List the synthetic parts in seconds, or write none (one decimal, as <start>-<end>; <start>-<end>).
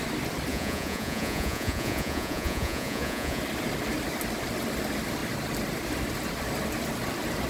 0.5-3.4